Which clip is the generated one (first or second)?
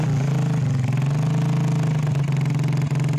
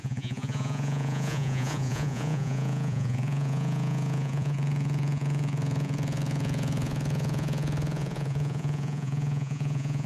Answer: second